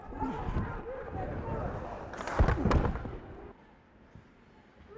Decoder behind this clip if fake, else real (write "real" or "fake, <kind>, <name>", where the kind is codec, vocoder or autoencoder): real